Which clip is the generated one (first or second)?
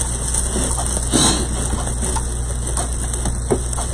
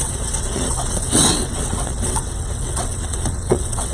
second